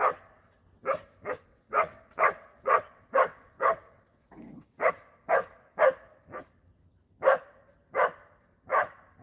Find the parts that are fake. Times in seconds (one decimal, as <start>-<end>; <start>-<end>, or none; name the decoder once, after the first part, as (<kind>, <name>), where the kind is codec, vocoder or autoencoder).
1.5-4.9 (vocoder, WaveNeXt)